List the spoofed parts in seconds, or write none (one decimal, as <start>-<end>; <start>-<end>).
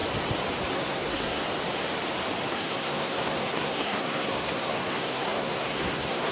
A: 0.7-1.4; 2.5-6.3